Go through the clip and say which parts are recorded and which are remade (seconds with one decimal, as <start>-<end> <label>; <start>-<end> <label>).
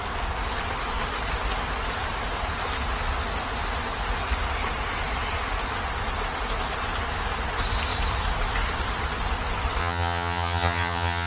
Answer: 0.0-9.8 recorded; 9.8-11.3 remade